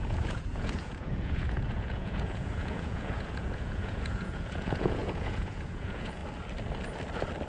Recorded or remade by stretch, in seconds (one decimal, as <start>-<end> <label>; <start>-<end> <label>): 0.0-6.2 remade; 6.2-7.5 recorded